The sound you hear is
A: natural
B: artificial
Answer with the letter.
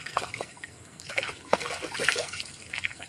B